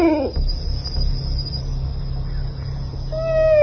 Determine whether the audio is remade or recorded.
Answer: recorded